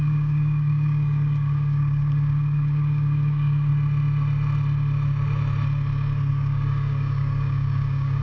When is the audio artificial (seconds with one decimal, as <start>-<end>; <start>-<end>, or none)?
0.0-3.7; 6.3-8.2